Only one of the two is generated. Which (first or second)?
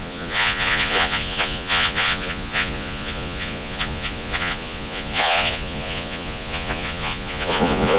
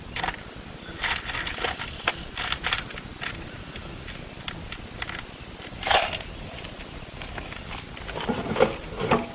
first